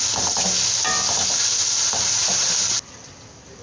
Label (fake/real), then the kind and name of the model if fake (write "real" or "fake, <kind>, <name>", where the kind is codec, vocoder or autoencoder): real